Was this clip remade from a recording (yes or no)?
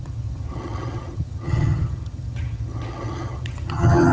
yes